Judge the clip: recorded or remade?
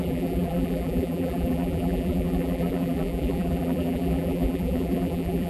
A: remade